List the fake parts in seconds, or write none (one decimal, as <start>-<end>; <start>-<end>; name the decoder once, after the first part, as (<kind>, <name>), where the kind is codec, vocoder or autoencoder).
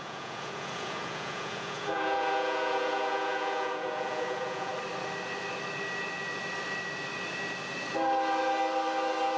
0.0-4.7 (vocoder, Vocos)